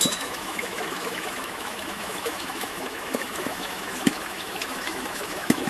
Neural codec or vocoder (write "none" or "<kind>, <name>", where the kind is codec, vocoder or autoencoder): autoencoder, DAC-VAE